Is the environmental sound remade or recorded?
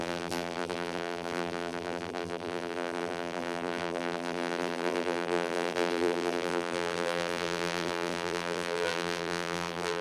remade